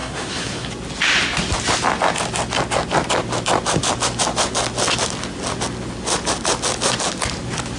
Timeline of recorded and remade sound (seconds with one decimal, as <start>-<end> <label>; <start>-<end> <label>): 0.0-0.7 remade; 0.7-7.8 recorded